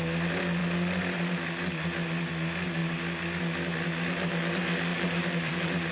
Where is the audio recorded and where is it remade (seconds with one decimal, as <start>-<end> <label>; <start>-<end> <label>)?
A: 0.0-4.9 recorded; 4.9-5.5 remade; 5.5-5.9 recorded